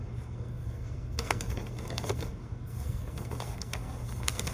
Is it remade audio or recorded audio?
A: remade